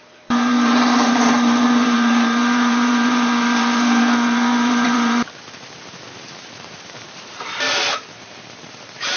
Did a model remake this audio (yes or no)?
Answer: yes